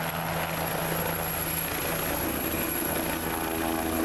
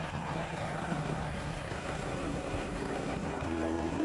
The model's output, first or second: second